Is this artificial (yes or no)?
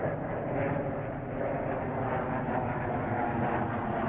no